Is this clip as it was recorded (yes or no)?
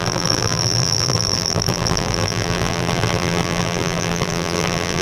no